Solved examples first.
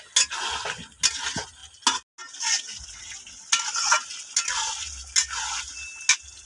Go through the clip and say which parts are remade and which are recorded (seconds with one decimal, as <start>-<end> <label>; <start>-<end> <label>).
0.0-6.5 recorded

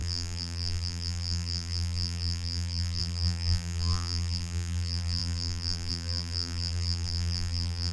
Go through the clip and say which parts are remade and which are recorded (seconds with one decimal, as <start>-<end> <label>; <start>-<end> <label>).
0.0-7.9 remade

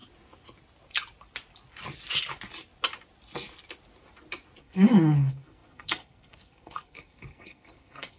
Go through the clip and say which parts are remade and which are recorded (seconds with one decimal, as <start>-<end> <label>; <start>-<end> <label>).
0.0-4.6 recorded; 4.6-8.2 remade